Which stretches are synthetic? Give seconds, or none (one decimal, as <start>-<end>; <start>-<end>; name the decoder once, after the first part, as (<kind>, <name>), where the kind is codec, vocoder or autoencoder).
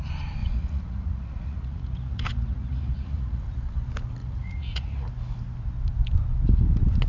0.4-3.8 (vocoder, Vocos); 4.2-5.1